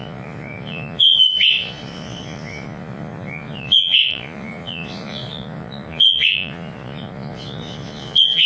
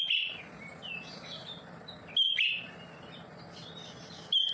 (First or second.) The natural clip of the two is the second